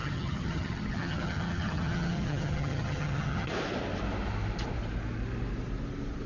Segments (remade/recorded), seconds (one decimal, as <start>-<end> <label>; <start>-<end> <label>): 0.0-3.5 remade; 3.5-6.3 recorded